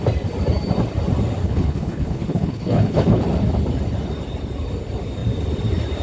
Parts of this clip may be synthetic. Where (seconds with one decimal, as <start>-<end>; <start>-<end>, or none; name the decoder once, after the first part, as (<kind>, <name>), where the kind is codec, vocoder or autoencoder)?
1.4-3.2 (codec, HILCodec)